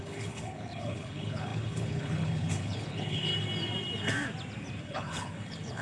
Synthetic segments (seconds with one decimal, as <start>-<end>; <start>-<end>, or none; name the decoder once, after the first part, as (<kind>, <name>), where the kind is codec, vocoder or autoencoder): 0.0-3.3 (codec, HILCodec); 4.8-5.8